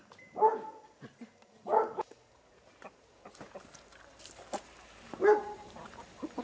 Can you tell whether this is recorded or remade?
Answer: remade